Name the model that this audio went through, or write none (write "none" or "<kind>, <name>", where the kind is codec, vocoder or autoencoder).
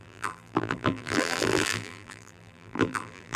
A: vocoder, BigVGAN v2